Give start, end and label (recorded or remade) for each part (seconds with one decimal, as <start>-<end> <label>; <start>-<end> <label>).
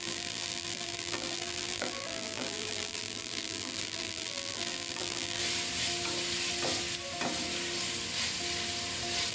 0.0-5.4 remade; 5.4-9.3 recorded